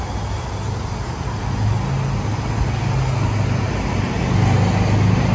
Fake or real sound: real